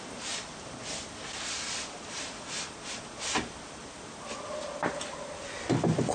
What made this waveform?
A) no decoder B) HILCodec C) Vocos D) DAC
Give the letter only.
A